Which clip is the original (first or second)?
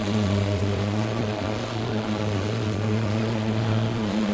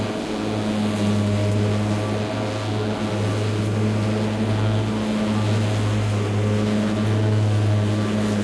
second